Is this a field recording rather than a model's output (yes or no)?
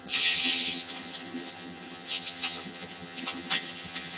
no